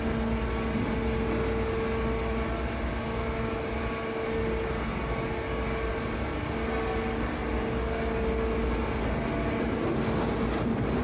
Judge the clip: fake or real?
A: real